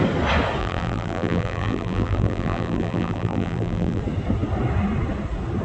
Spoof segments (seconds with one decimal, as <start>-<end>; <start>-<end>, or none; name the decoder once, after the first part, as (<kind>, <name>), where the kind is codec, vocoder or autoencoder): 0.6-4.0 (vocoder, BigVGAN v2)